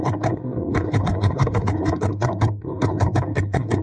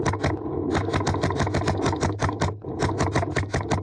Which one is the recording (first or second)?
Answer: second